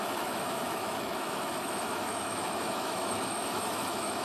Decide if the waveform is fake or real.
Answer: fake